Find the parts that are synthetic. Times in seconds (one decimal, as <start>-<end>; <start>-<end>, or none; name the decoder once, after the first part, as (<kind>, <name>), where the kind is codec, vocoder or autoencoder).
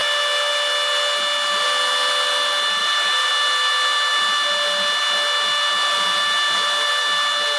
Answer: 2.8-3.3 (vocoder, BigVGAN v2)